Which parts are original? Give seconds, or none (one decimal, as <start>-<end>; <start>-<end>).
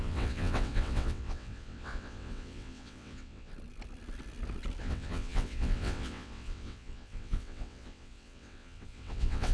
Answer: 3.5-4.8